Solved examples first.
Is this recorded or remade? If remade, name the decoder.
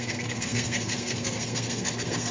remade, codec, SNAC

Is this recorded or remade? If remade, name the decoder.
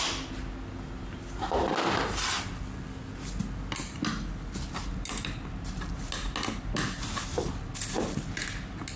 recorded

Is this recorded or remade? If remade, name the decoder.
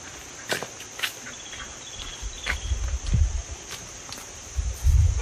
recorded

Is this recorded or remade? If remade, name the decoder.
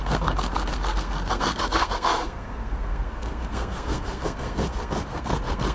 remade, codec, SNAC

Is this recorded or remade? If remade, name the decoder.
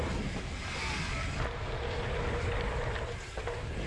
recorded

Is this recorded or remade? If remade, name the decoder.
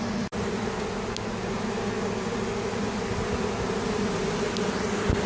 recorded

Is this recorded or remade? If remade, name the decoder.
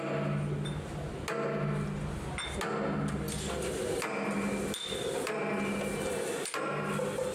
recorded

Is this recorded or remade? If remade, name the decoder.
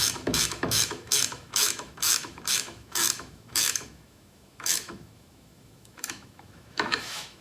remade, autoencoder, DAC-VAE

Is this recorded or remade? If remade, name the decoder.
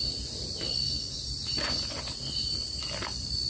recorded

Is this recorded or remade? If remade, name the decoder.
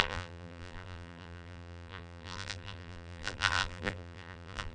remade, vocoder, BigVGAN v2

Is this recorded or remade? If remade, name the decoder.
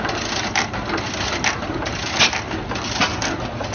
recorded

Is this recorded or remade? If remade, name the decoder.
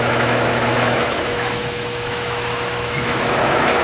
remade, autoencoder, DAC-VAE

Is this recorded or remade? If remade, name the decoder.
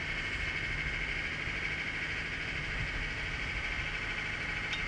recorded